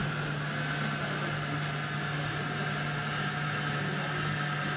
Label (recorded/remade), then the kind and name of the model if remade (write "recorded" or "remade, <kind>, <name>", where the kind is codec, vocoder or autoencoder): recorded